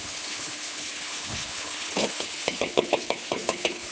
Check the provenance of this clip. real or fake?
fake